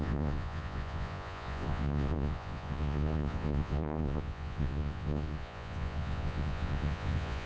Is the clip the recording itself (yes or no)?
no